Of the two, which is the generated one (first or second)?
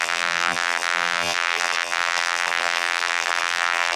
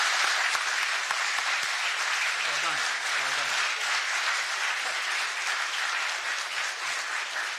first